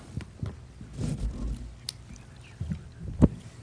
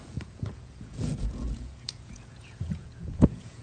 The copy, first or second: second